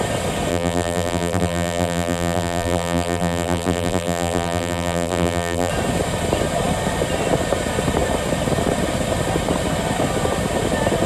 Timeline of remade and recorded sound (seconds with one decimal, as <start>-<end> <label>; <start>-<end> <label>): 0.0-0.5 recorded; 0.5-5.7 remade; 5.7-11.1 recorded

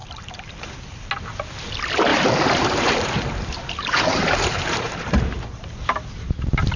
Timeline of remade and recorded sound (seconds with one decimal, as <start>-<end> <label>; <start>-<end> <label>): 0.0-0.6 remade; 0.6-2.1 recorded; 2.1-5.8 remade; 5.8-6.8 recorded

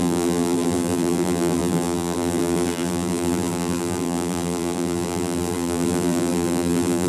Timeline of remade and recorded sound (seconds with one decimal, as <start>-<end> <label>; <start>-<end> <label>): 0.0-7.1 remade

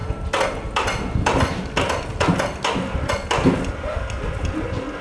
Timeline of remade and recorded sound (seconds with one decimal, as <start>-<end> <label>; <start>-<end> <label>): 0.0-5.0 recorded